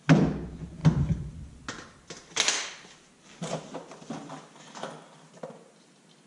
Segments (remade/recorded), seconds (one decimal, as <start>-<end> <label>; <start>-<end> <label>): 0.0-6.3 recorded